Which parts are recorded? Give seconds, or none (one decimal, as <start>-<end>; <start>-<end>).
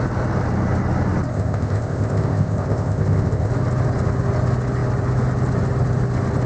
0.0-1.3; 3.5-6.5